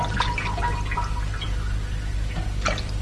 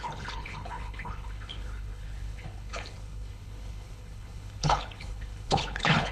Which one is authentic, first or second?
first